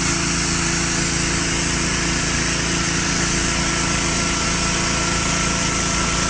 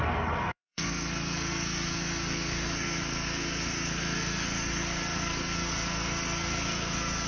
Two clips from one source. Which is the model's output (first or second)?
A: second